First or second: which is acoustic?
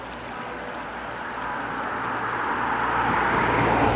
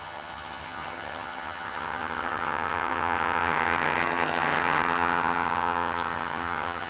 first